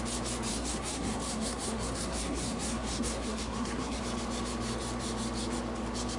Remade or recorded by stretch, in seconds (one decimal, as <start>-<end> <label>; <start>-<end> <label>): 0.0-0.5 recorded; 0.5-4.0 remade; 4.0-6.2 recorded